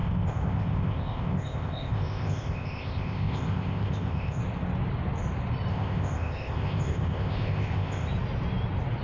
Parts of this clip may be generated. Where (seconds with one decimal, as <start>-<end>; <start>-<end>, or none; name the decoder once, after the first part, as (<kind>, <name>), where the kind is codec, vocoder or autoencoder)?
0.0-4.4 (codec, ZipCodec); 5.7-8.1